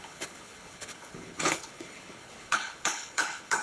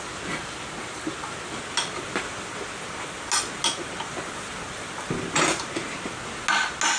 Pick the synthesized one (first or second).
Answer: first